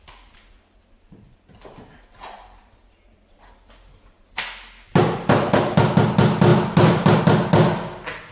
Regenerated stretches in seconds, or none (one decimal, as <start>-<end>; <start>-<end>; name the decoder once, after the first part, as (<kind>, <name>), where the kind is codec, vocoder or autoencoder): none